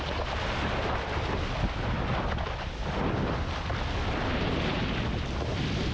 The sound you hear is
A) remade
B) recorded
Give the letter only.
B